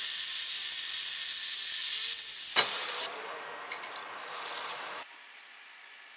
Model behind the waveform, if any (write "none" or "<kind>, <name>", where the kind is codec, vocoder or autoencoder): none